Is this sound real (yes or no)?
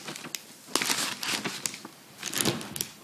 yes